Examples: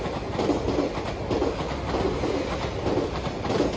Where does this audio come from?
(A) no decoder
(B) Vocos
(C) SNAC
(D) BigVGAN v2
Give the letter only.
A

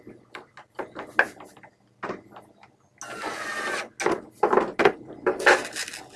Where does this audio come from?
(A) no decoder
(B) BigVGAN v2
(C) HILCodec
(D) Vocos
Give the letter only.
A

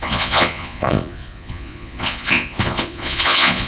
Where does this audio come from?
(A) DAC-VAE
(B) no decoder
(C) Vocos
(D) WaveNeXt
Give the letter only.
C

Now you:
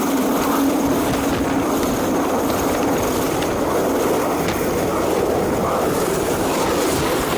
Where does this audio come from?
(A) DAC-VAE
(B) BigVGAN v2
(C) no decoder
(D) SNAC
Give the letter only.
C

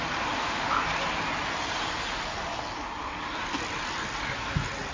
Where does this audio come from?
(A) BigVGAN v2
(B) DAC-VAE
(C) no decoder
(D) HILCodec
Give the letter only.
C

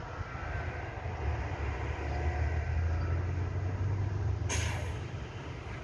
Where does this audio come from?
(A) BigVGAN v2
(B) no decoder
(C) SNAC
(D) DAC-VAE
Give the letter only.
B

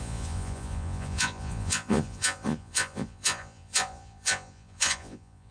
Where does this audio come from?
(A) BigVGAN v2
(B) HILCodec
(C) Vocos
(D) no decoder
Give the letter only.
C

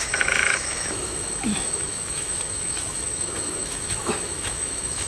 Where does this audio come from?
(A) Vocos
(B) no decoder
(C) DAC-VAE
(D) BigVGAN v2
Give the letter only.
C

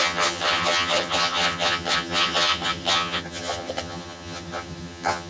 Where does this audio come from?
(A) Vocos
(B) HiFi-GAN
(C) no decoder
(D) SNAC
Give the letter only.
B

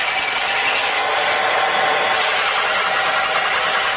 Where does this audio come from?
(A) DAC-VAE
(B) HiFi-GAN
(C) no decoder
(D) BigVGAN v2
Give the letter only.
C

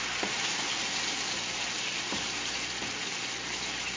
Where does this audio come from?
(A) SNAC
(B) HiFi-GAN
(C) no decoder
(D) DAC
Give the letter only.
C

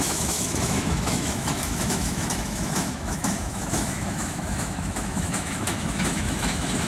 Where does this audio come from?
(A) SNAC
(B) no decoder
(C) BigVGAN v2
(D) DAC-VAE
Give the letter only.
D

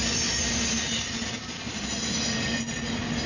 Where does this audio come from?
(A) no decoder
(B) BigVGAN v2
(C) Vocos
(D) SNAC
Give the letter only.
A